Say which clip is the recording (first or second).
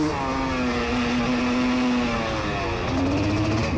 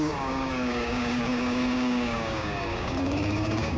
first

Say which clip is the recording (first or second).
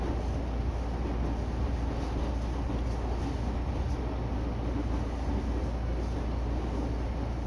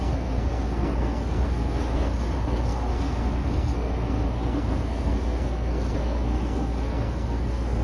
first